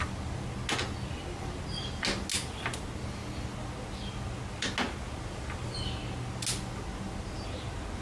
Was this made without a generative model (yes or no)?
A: yes